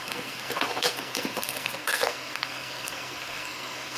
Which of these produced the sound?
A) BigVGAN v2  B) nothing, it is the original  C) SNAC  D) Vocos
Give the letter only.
C